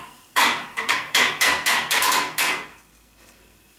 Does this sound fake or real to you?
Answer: fake